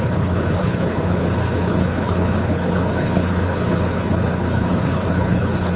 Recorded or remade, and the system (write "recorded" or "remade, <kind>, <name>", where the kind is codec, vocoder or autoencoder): remade, codec, HILCodec